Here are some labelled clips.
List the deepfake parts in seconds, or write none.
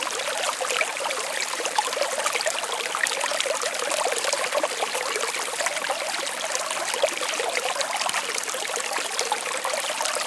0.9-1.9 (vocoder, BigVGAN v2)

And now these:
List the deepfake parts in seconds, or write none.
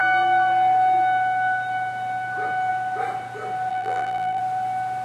3.7-4.4 (vocoder, BigVGAN v2)